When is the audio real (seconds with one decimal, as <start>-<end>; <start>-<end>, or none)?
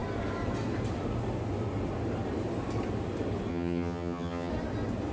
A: 0.0-3.5; 4.5-5.1